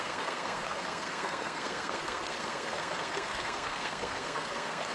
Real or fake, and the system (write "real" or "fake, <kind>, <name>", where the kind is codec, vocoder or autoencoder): fake, codec, SNAC